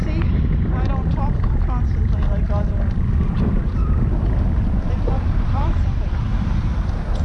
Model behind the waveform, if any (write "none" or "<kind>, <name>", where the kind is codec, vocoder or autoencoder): none